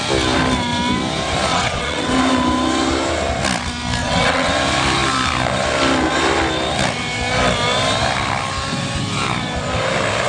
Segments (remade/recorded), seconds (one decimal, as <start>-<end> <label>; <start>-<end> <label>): 0.0-1.5 recorded; 1.5-2.2 remade; 2.2-4.0 recorded; 4.0-4.5 remade; 4.5-10.3 recorded